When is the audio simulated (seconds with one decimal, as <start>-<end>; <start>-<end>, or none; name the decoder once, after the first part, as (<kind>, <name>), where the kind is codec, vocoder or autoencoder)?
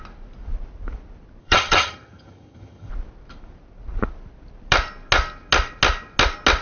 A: 1.4-2.9 (vocoder, HiFi-GAN)